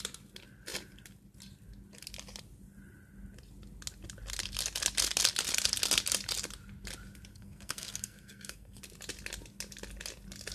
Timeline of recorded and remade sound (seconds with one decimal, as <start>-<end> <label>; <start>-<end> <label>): 0.0-7.3 recorded; 7.3-8.8 remade; 8.8-10.5 recorded